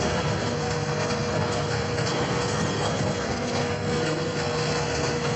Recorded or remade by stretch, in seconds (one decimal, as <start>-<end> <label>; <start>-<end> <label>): 0.0-5.4 remade